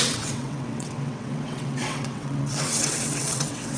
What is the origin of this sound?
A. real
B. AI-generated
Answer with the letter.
B